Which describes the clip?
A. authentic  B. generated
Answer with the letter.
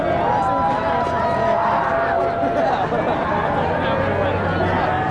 A